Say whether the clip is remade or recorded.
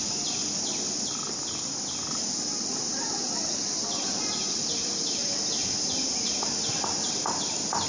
recorded